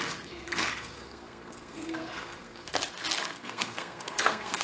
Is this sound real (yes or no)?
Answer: no